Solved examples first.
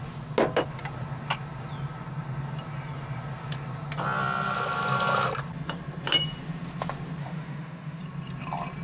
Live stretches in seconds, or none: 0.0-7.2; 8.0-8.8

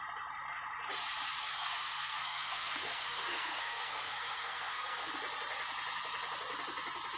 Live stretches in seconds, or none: 0.0-1.4; 5.1-7.2